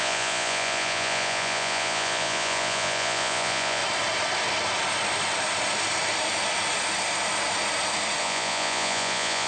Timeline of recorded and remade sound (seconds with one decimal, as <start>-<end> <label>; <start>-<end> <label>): 0.0-3.8 remade; 3.8-8.2 recorded; 8.2-9.5 remade

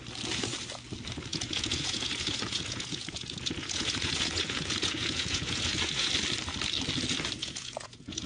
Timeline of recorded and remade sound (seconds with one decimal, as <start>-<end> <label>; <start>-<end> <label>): 0.0-1.3 recorded; 1.3-6.1 remade; 6.1-7.4 recorded; 7.4-8.3 remade

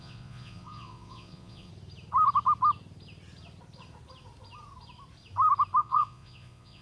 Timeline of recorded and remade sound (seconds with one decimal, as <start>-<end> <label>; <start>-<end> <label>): 0.0-1.7 remade; 1.7-5.8 recorded; 5.8-6.8 remade